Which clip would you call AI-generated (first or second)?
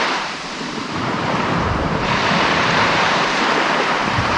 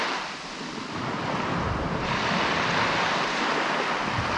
first